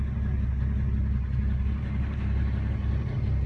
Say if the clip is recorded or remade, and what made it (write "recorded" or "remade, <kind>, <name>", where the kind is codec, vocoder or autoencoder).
recorded